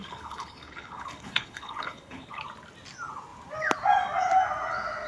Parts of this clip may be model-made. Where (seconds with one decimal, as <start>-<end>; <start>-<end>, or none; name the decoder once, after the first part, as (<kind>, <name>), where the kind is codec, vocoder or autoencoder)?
0.0-2.4 (codec, HILCodec)